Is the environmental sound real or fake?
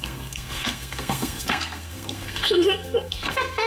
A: fake